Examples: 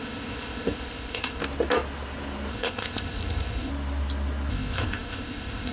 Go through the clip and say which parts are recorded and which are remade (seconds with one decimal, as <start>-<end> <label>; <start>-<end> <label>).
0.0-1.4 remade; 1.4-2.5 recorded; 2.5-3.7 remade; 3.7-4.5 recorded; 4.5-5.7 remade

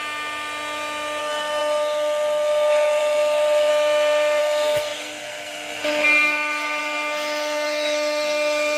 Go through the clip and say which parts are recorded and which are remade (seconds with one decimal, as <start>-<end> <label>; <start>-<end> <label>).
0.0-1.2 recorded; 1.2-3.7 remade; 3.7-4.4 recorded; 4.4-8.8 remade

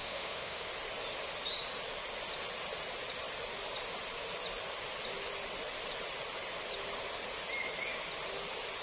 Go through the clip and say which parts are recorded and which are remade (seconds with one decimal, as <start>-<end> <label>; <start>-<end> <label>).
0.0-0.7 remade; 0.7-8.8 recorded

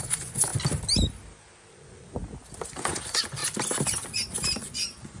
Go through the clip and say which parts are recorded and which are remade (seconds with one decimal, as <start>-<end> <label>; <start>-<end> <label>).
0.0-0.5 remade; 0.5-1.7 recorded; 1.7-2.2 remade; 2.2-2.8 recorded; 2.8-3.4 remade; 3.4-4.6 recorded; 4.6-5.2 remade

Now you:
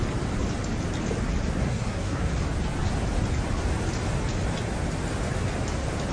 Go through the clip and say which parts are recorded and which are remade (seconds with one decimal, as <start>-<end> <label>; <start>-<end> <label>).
0.0-1.6 recorded; 1.6-2.3 remade; 2.3-6.1 recorded

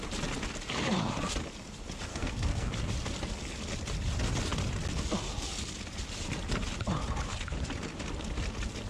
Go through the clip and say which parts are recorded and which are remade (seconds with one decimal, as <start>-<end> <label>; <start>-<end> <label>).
0.0-2.1 recorded; 2.1-2.7 remade; 2.7-8.9 recorded